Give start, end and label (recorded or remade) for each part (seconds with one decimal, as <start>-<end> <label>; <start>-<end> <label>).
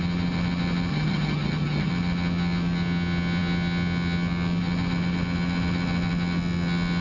0.0-0.9 recorded; 0.9-1.9 remade; 1.9-7.0 recorded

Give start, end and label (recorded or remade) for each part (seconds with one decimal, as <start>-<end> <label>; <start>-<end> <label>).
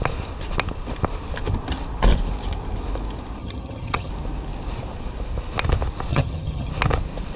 0.0-3.4 recorded; 3.4-4.1 remade; 4.1-6.1 recorded; 6.1-6.7 remade; 6.7-7.4 recorded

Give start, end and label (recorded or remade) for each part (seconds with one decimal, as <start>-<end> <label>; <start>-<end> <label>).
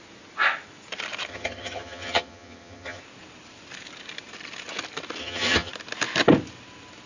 0.0-1.3 recorded; 1.3-3.0 remade; 3.0-5.2 recorded; 5.2-5.7 remade; 5.7-7.1 recorded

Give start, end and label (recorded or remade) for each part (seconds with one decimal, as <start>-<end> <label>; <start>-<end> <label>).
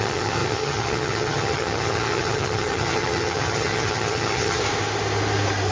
0.0-4.6 remade; 4.6-5.7 recorded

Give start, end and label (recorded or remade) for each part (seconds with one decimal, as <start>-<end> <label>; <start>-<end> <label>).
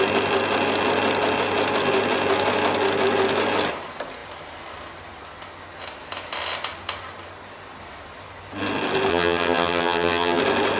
0.0-9.1 recorded; 9.1-10.4 remade; 10.4-10.8 recorded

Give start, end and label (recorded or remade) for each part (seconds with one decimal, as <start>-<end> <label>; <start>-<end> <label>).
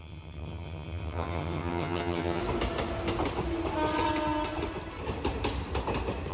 0.0-2.4 remade; 2.4-6.3 recorded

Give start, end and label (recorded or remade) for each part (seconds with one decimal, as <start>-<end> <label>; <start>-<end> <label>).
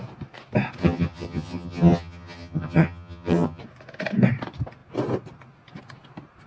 0.0-0.8 recorded; 0.8-3.6 remade; 3.6-6.5 recorded